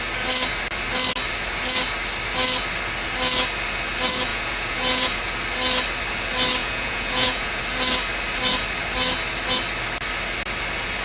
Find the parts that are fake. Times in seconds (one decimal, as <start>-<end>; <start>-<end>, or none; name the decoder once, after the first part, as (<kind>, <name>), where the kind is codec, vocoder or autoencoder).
4.3-5.2 (vocoder, Vocos); 6.6-7.6